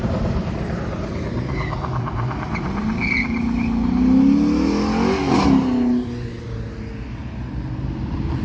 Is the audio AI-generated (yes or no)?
no